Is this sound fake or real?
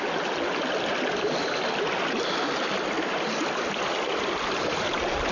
real